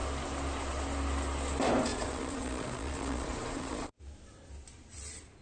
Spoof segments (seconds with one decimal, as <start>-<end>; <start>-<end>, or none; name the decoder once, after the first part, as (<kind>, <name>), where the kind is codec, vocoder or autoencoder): 1.9-4.0 (vocoder, Vocos)